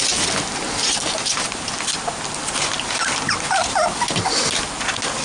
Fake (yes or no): no